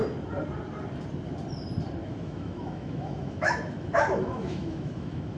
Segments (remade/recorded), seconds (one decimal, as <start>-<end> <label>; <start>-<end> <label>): 0.0-2.0 recorded; 2.0-5.4 remade